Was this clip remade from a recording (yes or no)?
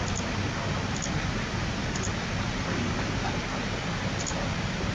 no